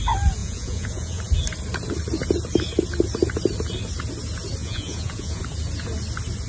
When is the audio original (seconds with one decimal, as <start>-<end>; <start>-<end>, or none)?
0.0-0.4; 1.2-4.6; 5.4-6.5